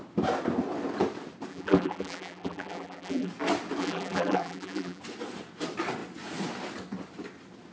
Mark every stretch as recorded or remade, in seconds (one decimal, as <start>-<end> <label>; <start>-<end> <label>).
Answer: 0.0-1.5 recorded; 1.5-3.3 remade; 3.3-3.8 recorded; 3.8-5.0 remade; 5.0-7.7 recorded